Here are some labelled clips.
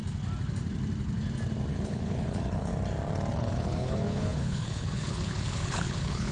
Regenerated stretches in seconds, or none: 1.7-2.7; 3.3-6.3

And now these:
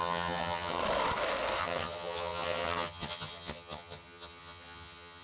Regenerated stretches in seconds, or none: 0.0-0.8; 1.6-5.2

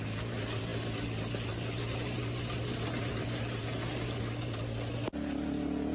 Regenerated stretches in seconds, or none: none

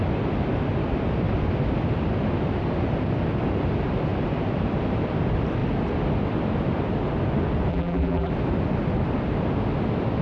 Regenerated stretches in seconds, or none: 7.7-8.3

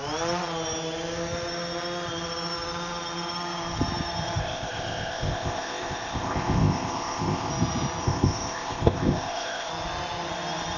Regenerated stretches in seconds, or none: 4.4-7.5; 8.0-9.7